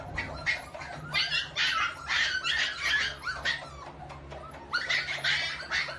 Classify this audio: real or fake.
real